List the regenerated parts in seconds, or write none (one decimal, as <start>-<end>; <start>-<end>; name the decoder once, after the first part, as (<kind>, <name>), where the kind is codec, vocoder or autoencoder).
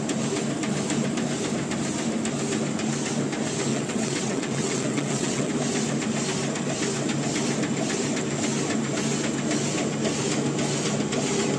3.7-5.5 (vocoder, WaveNeXt)